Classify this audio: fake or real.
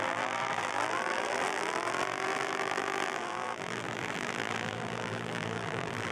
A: fake